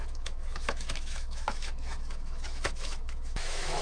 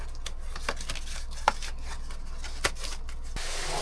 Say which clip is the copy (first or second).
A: first